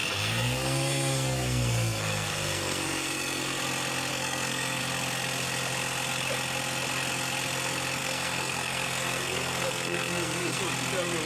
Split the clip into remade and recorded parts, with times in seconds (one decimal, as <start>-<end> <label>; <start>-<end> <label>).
0.0-3.6 remade; 3.6-4.1 recorded; 4.1-4.8 remade; 4.8-8.0 recorded; 8.0-10.6 remade; 10.6-11.3 recorded